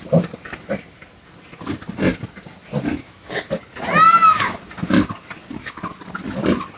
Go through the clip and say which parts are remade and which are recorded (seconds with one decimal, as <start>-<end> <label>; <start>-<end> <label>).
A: 0.0-2.9 recorded; 2.9-3.5 remade; 3.5-4.1 recorded; 4.1-4.6 remade; 4.6-6.8 recorded